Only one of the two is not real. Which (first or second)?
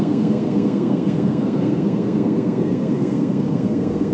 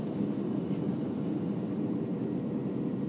first